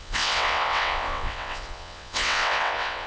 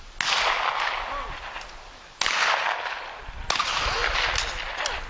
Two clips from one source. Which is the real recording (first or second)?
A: second